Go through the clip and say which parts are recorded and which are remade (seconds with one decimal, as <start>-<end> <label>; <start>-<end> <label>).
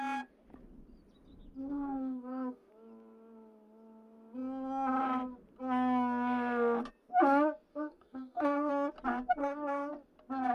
0.0-1.6 recorded; 1.6-2.7 remade; 2.7-7.7 recorded; 7.7-8.7 remade; 8.7-9.4 recorded; 9.4-9.9 remade; 9.9-10.5 recorded